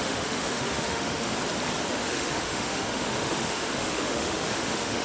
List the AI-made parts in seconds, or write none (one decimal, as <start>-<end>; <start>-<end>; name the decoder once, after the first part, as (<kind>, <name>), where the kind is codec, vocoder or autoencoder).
0.0-1.3 (autoencoder, DAC-VAE); 1.9-5.0